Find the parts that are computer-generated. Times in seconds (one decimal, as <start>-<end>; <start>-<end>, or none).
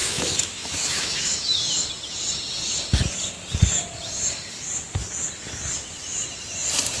0.0-1.6